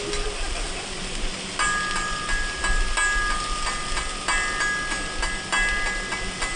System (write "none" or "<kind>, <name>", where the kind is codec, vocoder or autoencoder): none